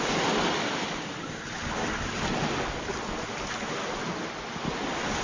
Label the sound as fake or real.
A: real